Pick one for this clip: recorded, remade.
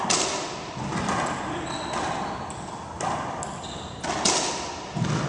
recorded